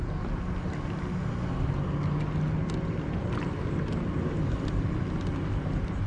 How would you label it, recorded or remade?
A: recorded